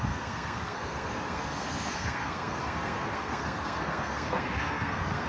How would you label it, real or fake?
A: fake